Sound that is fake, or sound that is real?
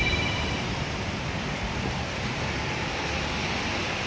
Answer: real